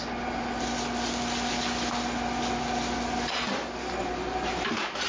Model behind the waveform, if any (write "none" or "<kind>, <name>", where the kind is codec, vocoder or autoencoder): none